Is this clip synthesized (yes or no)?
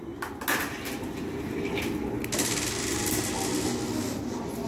no